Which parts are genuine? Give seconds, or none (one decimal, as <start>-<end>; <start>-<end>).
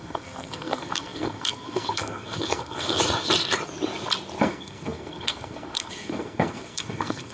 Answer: 3.0-4.4